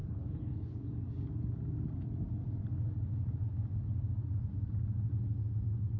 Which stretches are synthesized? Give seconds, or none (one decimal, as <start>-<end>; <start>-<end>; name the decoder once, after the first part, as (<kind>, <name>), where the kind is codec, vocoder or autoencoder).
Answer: 0.0-0.9 (codec, HILCodec)